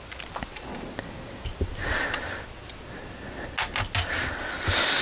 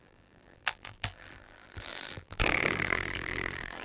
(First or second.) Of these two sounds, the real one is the first